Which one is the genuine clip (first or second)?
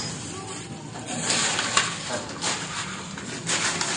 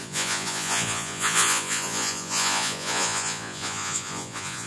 first